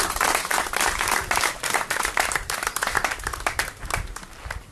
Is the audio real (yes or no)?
no